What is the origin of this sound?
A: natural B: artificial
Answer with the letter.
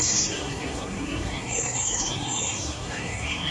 B